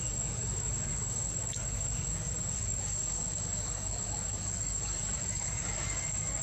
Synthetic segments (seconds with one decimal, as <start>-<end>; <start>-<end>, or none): 0.0-6.4